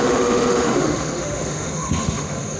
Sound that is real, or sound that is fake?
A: fake